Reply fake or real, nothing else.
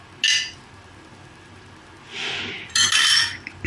real